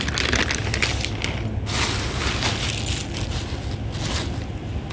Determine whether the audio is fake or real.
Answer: real